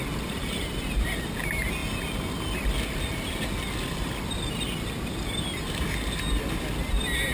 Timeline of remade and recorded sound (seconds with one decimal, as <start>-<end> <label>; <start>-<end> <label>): 0.0-7.3 recorded